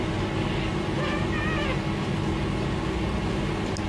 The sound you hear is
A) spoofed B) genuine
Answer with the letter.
B